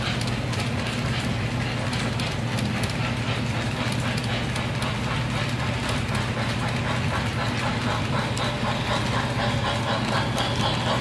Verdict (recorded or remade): recorded